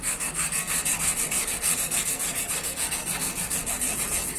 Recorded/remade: remade